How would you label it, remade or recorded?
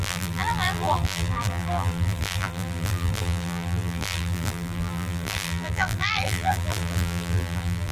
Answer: remade